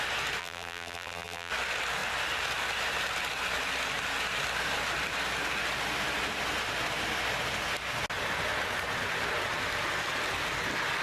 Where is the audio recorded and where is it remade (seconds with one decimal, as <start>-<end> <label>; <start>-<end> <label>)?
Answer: 0.0-0.4 recorded; 0.4-1.5 remade; 1.5-11.0 recorded